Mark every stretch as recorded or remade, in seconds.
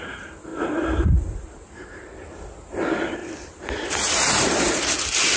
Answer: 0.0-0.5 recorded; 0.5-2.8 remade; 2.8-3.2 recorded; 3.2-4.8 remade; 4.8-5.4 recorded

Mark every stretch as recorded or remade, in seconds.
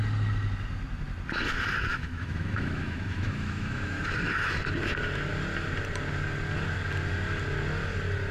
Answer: 0.0-1.9 recorded; 1.9-4.0 remade; 4.0-8.3 recorded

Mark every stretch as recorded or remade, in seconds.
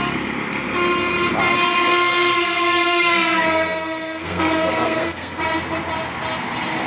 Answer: 0.0-1.9 recorded; 1.9-5.4 remade; 5.4-6.9 recorded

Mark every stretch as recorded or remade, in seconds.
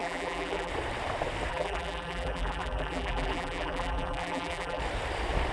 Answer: 0.0-0.7 remade; 0.7-1.5 recorded; 1.5-4.8 remade; 4.8-5.5 recorded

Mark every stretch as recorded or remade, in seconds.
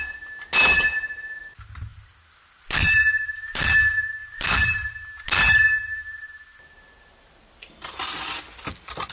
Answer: 0.0-1.9 recorded; 1.9-3.8 remade; 3.8-4.2 recorded; 4.2-5.2 remade; 5.2-5.9 recorded; 5.9-8.1 remade; 8.1-9.1 recorded